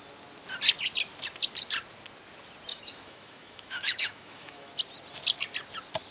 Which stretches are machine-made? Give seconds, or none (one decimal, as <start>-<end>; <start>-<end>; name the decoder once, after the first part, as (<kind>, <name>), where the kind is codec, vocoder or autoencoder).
2.7-4.7 (autoencoder, DAC-VAE)